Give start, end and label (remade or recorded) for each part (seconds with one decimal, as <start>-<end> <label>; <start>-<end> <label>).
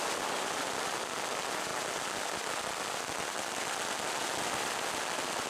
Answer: 0.0-5.5 recorded